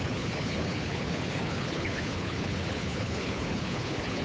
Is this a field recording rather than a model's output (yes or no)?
no